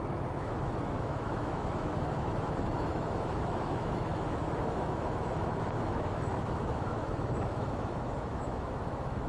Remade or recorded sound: remade